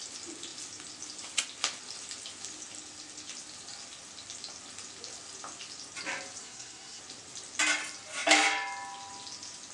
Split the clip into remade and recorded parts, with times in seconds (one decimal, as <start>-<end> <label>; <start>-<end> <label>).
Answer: 0.0-6.4 recorded; 6.4-7.0 remade; 7.0-9.7 recorded